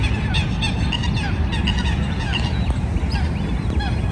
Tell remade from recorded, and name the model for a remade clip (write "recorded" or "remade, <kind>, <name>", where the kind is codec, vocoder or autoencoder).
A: recorded